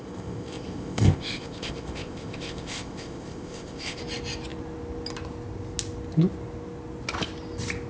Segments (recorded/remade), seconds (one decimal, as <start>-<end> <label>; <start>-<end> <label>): 0.0-4.0 remade; 4.0-7.9 recorded